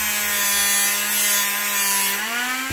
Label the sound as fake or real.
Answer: real